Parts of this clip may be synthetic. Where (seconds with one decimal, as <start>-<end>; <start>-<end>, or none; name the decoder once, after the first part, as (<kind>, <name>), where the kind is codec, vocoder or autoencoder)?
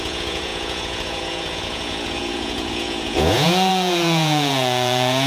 0.0-5.3 (vocoder, Vocos)